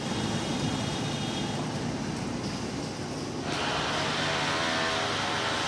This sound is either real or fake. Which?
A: real